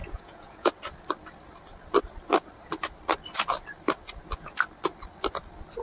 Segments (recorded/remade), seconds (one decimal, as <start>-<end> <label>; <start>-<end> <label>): 0.0-0.7 remade; 0.7-5.8 recorded